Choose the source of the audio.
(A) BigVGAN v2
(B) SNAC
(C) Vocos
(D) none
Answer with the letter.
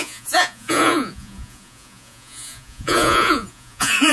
C